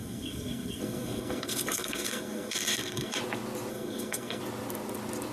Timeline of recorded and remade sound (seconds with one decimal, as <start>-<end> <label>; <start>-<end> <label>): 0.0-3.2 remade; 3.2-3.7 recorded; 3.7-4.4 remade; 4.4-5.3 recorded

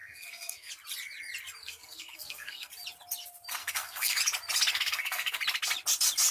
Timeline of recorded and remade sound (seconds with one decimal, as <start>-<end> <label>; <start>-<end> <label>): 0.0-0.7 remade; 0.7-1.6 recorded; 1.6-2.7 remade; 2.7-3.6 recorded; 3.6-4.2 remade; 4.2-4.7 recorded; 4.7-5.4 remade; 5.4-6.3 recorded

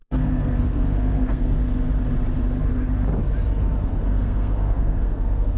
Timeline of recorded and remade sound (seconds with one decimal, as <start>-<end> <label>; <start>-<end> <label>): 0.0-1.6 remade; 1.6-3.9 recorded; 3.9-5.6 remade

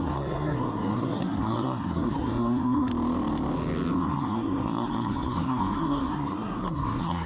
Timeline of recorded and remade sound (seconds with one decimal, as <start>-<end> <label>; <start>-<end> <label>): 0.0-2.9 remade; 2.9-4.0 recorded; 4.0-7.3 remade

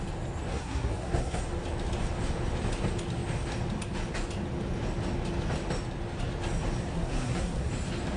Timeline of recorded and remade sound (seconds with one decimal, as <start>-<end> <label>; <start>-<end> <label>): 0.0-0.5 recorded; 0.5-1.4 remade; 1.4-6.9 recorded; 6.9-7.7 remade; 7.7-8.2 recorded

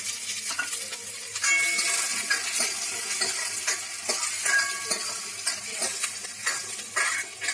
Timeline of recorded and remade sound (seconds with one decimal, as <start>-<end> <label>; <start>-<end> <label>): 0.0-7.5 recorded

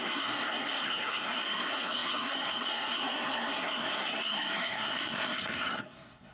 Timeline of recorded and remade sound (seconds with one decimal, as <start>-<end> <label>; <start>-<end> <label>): 0.0-6.3 remade